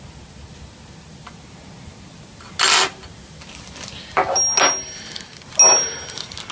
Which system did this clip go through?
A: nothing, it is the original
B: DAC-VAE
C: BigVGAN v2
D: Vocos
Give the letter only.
A